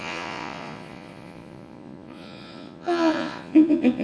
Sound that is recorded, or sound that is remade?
remade